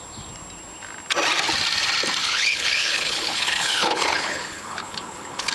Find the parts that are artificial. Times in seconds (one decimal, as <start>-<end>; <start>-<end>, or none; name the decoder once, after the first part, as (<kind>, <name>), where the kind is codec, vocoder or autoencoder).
2.2-5.5 (codec, HILCodec)